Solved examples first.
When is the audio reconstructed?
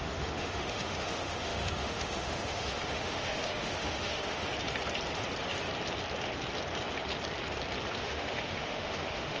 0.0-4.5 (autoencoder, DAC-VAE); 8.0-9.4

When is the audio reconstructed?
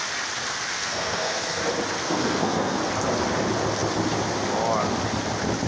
0.7-1.6 (codec, SNAC); 2.0-2.8